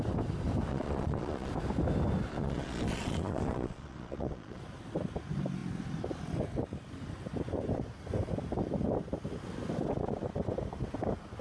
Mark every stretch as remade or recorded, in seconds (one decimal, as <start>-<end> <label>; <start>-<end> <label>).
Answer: 0.0-0.7 recorded; 0.7-1.5 remade; 1.5-2.3 recorded; 2.3-4.6 remade; 4.6-11.4 recorded